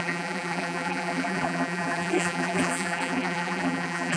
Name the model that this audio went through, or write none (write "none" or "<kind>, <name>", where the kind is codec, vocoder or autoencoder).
vocoder, BigVGAN v2